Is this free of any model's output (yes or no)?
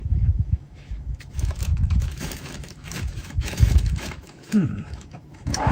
no